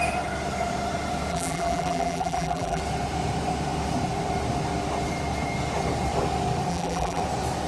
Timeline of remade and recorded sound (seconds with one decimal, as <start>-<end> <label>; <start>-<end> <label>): 0.0-1.3 recorded; 1.3-2.8 remade; 2.8-6.7 recorded; 6.7-7.2 remade; 7.2-7.7 recorded

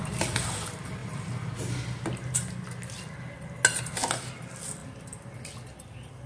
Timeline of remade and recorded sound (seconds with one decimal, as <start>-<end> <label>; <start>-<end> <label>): 0.0-1.0 recorded; 1.0-2.1 remade; 2.1-4.8 recorded; 4.8-5.4 remade; 5.4-6.3 recorded

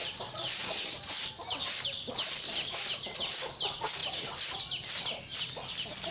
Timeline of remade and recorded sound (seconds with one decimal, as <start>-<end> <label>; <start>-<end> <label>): 0.0-4.0 recorded; 4.0-4.6 remade; 4.6-6.1 recorded

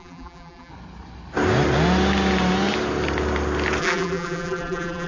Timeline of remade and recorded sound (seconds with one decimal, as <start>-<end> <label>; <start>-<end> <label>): 0.0-0.7 remade; 0.7-3.8 recorded; 3.8-5.1 remade

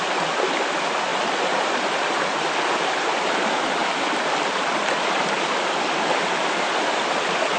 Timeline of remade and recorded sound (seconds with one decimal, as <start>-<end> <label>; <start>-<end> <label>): 0.0-3.8 recorded; 3.8-4.8 remade; 4.8-7.6 recorded

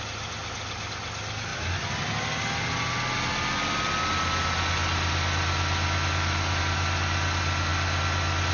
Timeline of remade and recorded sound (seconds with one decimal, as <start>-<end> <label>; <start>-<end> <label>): 0.0-8.5 recorded

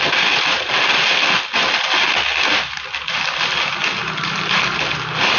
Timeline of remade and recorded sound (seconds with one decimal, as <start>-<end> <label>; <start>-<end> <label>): 0.0-5.4 recorded